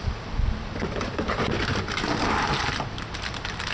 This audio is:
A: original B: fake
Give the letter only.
B